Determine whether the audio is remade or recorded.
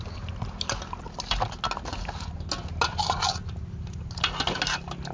recorded